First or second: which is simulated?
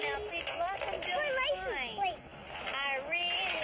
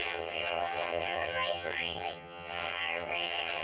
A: second